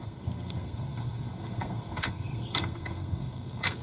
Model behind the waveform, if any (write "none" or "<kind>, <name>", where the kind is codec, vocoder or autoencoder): codec, SNAC